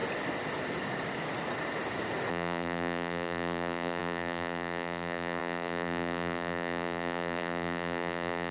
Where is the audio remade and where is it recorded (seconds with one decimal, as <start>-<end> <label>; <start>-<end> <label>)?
0.0-2.3 recorded; 2.3-8.5 remade